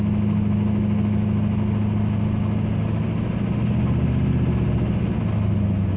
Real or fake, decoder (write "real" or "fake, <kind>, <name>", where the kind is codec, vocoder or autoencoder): real